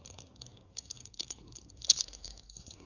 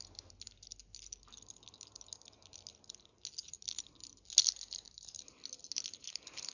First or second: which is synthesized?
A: first